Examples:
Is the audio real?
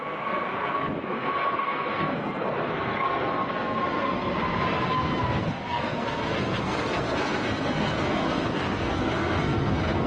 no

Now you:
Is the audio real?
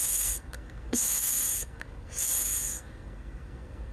no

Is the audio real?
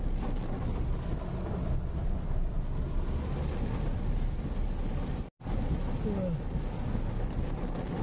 yes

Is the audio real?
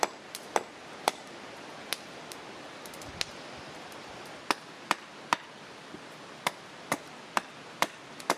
yes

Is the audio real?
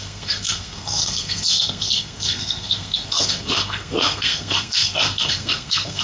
no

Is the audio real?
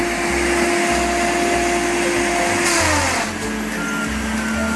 yes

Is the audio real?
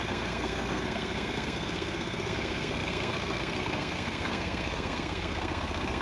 no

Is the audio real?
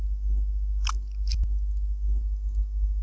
yes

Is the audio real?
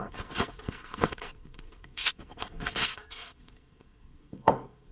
no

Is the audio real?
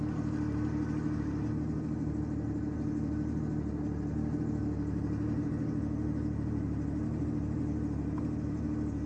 yes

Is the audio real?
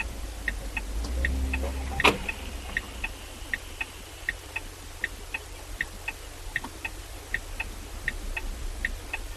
yes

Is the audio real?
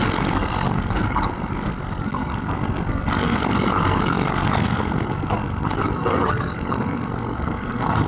no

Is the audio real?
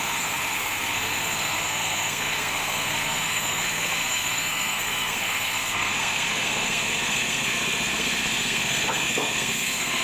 no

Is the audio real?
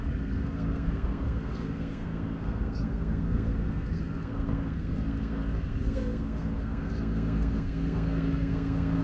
no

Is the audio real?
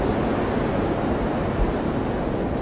yes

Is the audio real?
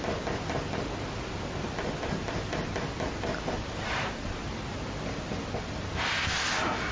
yes